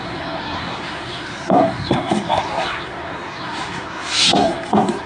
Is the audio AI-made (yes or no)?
yes